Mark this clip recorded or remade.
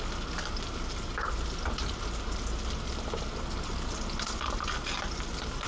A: recorded